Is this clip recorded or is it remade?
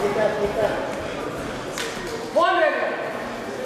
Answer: recorded